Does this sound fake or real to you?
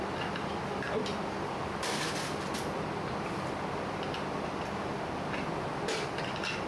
real